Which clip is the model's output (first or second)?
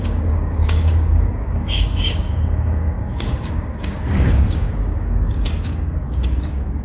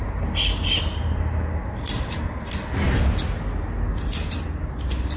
first